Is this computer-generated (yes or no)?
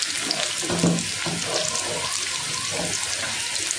no